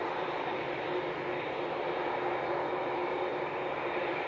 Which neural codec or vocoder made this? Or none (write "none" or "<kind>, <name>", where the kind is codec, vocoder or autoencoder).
vocoder, BigVGAN v2